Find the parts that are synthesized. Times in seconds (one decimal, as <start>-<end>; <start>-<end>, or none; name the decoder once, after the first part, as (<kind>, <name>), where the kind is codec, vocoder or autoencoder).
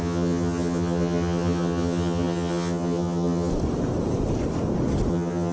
0.0-3.5 (vocoder, HiFi-GAN); 5.1-5.5